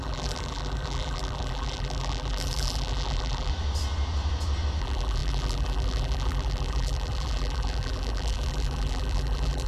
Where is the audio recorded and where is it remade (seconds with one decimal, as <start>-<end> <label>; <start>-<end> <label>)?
0.0-3.5 remade; 3.5-4.8 recorded; 4.8-9.7 remade